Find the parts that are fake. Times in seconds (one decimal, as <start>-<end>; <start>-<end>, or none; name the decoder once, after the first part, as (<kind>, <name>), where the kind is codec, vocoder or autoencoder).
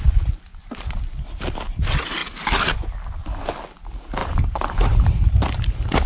4.2-6.1 (vocoder, BigVGAN v2)